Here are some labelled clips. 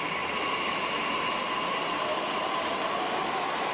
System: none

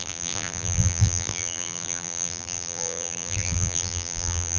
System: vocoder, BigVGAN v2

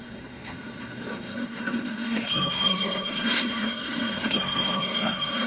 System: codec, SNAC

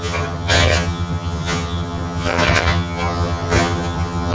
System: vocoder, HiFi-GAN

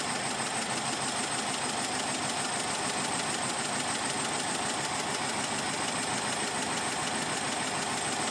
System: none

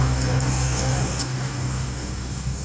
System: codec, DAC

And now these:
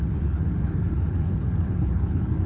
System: codec, HILCodec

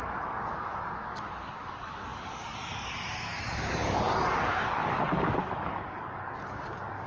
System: codec, DAC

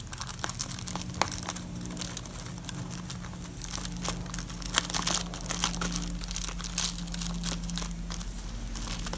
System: none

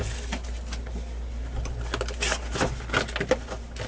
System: none